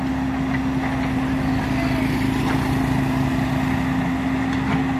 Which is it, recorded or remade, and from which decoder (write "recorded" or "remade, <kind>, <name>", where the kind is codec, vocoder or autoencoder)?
recorded